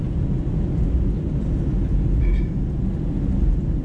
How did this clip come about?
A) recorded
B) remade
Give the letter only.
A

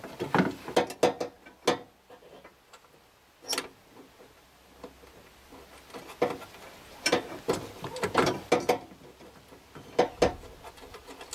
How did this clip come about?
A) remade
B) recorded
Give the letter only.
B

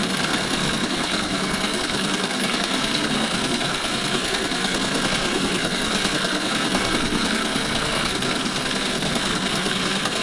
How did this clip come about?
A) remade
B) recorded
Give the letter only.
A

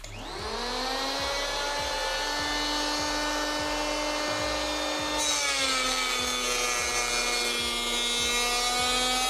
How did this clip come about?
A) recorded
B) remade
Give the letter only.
A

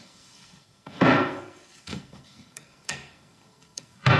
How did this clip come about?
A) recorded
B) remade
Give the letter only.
B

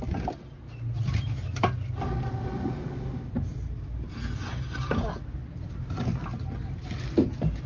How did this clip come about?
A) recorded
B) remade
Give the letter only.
A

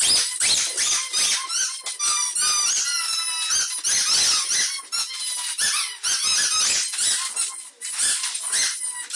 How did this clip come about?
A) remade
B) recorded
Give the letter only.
B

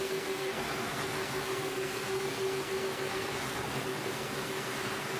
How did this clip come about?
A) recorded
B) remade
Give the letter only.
B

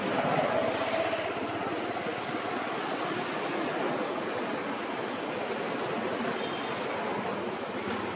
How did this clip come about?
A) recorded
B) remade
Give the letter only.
A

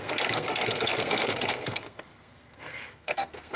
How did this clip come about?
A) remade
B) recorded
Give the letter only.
A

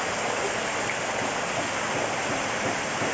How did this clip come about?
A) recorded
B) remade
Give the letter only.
A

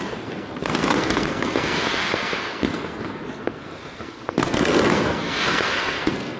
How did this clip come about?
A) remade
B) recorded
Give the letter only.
A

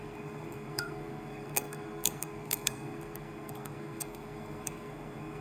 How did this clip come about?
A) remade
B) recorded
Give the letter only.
A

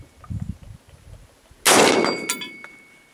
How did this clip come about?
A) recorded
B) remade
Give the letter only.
A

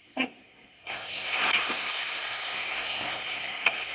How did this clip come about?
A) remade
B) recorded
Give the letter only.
A